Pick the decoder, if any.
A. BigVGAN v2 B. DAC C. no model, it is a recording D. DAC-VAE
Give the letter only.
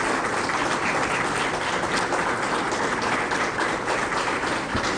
C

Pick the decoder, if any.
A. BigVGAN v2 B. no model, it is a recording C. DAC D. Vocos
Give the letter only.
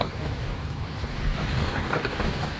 C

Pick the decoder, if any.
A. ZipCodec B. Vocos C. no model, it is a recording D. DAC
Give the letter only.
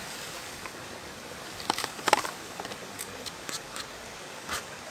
D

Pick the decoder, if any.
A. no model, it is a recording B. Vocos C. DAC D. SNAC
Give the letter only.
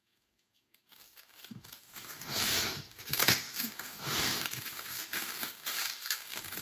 C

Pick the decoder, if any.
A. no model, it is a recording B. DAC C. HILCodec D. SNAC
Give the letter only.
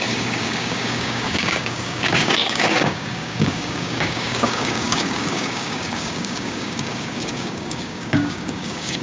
B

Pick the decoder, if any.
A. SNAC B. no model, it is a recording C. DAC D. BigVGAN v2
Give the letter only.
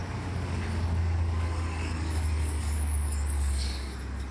C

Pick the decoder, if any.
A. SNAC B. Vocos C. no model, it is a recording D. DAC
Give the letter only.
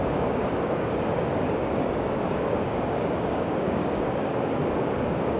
D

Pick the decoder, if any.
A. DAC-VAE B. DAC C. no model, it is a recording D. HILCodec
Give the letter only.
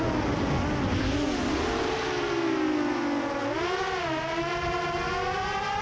C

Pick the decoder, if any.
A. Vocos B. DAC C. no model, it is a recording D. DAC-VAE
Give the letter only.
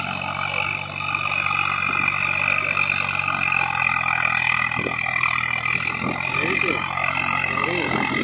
C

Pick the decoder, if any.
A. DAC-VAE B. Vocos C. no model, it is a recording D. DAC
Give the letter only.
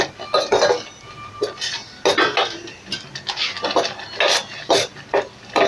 C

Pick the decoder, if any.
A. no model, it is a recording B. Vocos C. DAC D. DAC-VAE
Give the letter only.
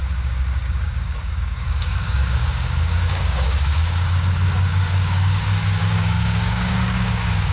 C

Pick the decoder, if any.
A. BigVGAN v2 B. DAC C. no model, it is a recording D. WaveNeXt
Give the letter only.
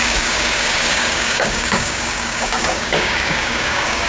B